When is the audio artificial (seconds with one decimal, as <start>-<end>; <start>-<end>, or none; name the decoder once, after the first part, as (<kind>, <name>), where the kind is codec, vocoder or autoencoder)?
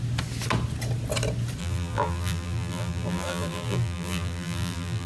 1.6-5.1 (vocoder, BigVGAN v2)